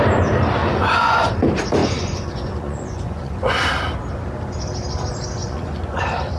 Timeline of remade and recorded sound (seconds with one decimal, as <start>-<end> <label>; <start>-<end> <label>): 0.0-0.6 recorded; 0.6-1.3 remade; 1.3-1.8 recorded; 1.8-3.5 remade; 3.5-5.4 recorded; 5.4-6.0 remade; 6.0-6.4 recorded